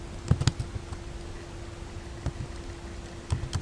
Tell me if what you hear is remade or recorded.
recorded